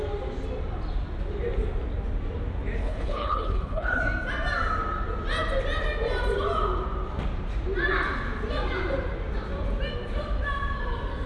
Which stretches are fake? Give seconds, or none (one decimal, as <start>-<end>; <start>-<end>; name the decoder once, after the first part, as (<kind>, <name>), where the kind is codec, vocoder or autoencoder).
2.8-4.0 (codec, HILCodec)